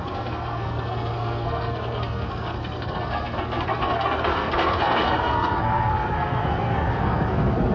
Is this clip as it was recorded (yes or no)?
no